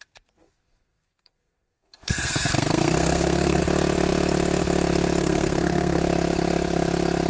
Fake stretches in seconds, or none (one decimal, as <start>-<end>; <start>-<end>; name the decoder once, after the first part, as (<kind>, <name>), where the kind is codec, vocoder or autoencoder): 0.4-3.6 (codec, SNAC); 5.2-6.0